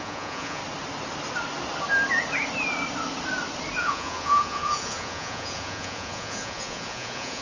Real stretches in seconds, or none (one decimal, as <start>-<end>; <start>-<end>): 0.6-3.8